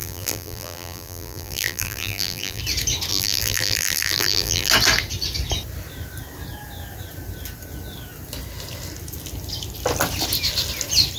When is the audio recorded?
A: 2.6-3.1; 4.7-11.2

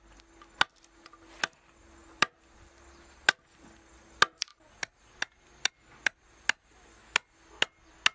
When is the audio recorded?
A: 0.0-2.0; 3.6-8.1

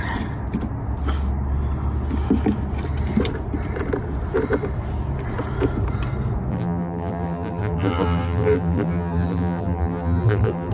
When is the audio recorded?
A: 0.0-6.5

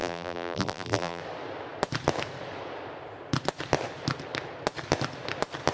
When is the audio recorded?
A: 1.2-5.7

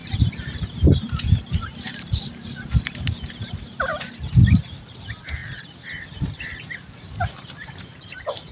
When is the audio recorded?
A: 5.4-6.7

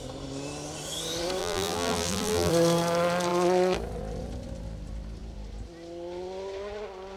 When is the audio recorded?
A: 0.0-1.4; 2.5-7.2

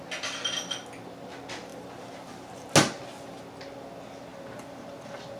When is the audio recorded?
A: 0.0-1.7; 2.7-5.4

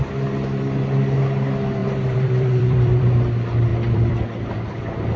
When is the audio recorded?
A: 0.0-1.8; 3.1-3.7; 4.8-5.2